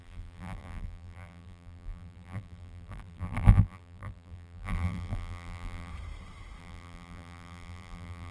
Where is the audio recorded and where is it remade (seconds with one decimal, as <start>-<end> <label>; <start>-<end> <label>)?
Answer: 0.0-5.9 remade; 5.9-6.6 recorded; 6.6-8.3 remade